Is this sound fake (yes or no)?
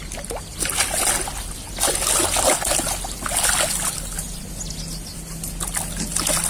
no